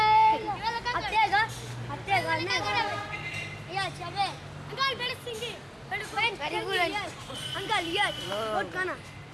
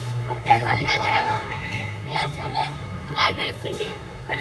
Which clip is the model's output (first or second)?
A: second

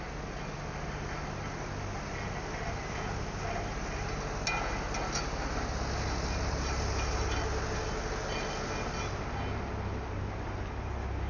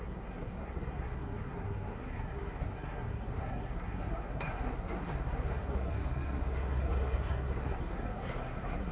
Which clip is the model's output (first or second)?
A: second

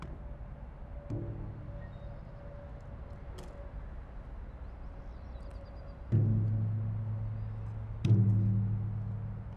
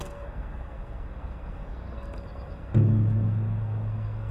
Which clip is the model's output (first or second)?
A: second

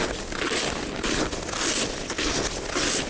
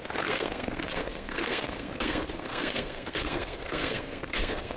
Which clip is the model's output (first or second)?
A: second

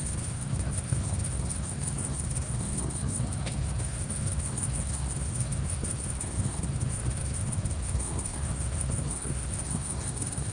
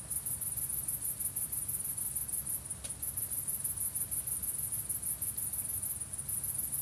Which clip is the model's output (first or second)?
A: first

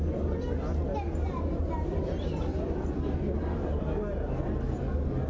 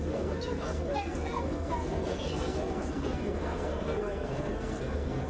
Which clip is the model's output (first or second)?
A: second